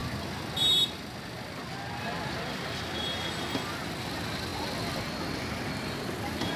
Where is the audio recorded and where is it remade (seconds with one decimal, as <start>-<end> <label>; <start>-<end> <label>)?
0.0-6.6 recorded